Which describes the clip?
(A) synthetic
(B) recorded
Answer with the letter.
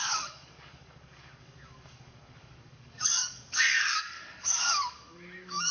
A